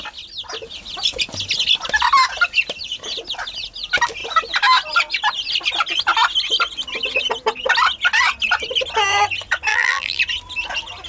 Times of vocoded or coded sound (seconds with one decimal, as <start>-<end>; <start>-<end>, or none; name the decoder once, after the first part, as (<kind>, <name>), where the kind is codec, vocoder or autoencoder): 9.7-10.2 (vocoder, BigVGAN v2)